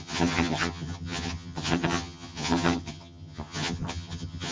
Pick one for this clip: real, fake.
fake